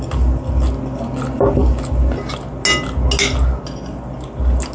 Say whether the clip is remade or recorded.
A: recorded